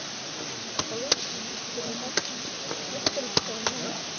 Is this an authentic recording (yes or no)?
yes